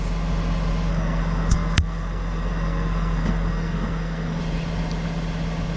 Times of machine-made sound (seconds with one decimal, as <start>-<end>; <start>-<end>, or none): 0.9-4.4